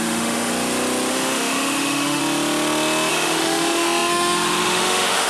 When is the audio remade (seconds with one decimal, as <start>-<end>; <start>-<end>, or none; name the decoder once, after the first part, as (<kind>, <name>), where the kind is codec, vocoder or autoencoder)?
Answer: 0.0-0.5 (autoencoder, DAC-VAE); 1.1-2.2; 3.1-5.3